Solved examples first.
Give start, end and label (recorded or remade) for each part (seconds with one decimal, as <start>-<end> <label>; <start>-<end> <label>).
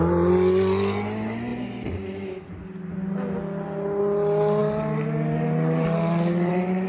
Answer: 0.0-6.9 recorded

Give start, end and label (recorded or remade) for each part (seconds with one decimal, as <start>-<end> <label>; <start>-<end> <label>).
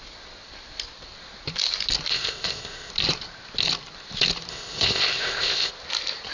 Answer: 0.0-2.1 recorded; 2.1-2.9 remade; 2.9-4.5 recorded; 4.5-5.7 remade; 5.7-6.3 recorded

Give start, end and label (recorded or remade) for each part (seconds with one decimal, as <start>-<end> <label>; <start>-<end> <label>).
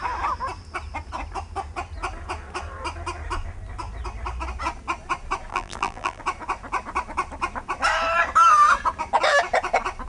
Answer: 0.0-5.5 recorded; 5.5-6.2 remade; 6.2-10.1 recorded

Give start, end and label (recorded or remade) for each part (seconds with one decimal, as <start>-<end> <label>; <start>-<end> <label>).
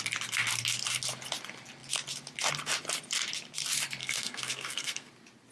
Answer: 0.0-4.0 recorded; 4.0-5.1 remade; 5.1-5.5 recorded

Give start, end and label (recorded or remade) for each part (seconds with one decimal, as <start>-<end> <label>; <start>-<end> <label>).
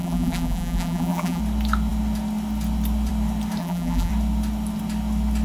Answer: 0.0-1.4 remade; 1.4-3.6 recorded; 3.6-4.1 remade; 4.1-5.4 recorded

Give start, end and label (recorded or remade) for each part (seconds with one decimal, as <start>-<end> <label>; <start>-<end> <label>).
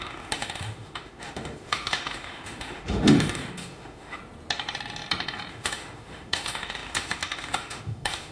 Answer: 0.0-4.2 remade; 4.2-5.5 recorded; 5.5-8.3 remade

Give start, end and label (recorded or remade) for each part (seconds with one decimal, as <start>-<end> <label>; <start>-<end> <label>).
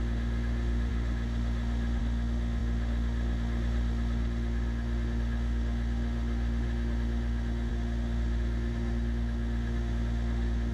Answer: 0.0-10.7 remade